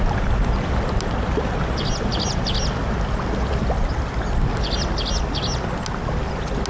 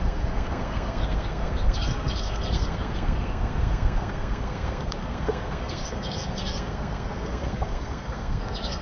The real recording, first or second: first